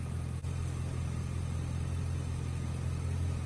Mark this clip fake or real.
real